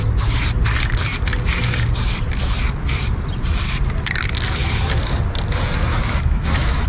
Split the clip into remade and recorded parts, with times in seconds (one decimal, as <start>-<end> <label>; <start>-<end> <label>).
0.0-5.9 recorded; 5.9-6.9 remade